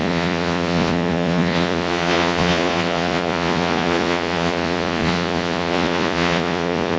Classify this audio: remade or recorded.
remade